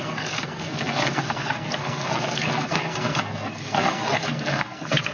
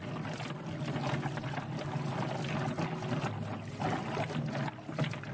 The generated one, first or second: first